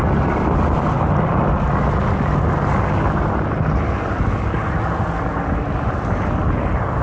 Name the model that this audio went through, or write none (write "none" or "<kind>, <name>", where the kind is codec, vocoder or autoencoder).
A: none